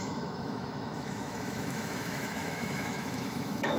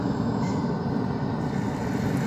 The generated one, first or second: first